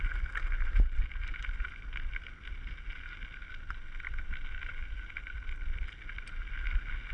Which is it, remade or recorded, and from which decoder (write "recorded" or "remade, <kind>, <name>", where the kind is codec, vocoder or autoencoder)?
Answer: recorded